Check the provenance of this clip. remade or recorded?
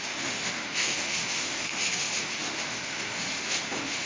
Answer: remade